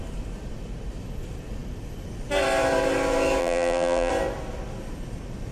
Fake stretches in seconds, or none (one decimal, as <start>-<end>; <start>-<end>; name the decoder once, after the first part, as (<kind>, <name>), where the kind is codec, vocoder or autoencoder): 3.4-4.1 (vocoder, BigVGAN v2)